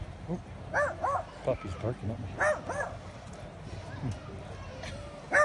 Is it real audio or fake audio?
real